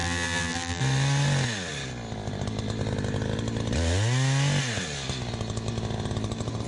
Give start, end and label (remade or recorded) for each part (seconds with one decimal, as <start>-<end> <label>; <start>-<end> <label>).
0.0-0.8 remade; 0.8-6.7 recorded